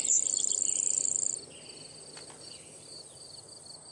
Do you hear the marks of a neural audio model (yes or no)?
no